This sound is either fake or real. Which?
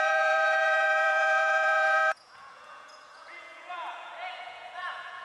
fake